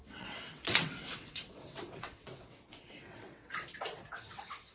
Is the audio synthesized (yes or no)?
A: yes